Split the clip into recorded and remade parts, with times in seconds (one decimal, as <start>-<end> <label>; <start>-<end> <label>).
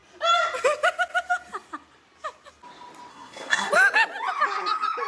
0.0-3.1 recorded; 3.1-3.7 remade; 3.7-5.1 recorded